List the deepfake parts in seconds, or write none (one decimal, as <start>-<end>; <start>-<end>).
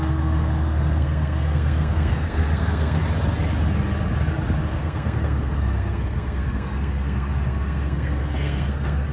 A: 0.0-3.0; 4.7-9.1